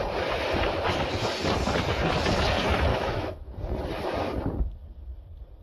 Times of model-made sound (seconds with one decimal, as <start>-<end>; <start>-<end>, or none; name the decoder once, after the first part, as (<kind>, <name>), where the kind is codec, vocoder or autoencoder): 2.9-3.5 (autoencoder, DAC-VAE)